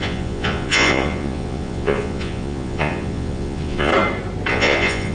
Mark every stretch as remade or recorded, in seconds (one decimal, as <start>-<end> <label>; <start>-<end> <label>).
0.0-3.9 remade; 3.9-4.5 recorded; 4.5-5.1 remade